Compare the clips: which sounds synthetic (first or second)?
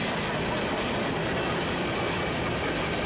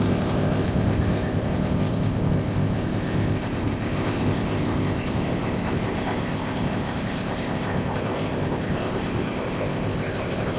second